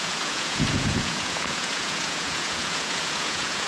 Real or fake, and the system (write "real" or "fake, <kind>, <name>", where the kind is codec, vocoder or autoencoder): fake, vocoder, Vocos